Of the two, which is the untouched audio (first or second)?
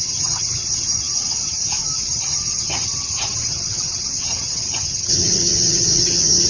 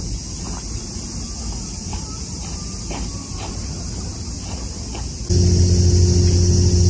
second